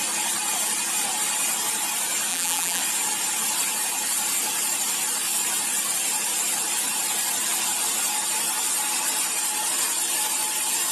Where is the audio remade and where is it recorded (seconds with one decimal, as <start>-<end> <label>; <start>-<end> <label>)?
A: 0.0-2.3 recorded; 2.3-2.8 remade; 2.8-10.9 recorded